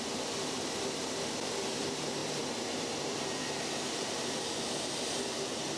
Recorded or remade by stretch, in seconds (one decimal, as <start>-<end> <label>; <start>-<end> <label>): 0.0-5.8 remade